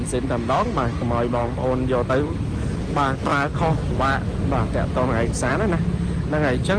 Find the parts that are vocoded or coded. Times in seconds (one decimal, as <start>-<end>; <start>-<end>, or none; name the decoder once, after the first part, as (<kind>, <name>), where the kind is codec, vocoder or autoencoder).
none